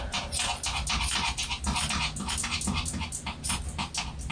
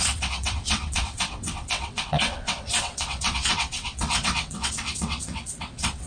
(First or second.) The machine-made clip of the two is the second